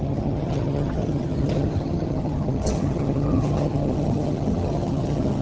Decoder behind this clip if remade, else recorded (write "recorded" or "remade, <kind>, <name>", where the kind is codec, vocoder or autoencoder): remade, vocoder, HiFi-GAN